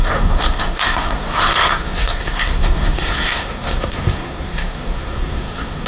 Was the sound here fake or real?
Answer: fake